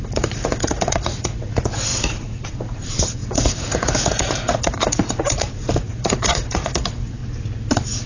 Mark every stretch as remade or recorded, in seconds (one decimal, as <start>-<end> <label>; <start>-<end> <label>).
0.0-7.2 remade; 7.2-8.1 recorded